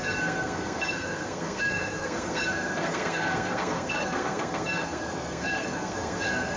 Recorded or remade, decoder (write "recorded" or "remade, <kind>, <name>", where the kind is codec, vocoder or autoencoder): remade, codec, SNAC